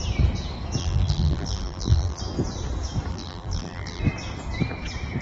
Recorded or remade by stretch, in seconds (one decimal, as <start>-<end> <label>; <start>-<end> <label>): 0.0-0.8 recorded; 0.8-2.2 remade; 2.2-3.1 recorded; 3.1-4.0 remade; 4.0-5.2 recorded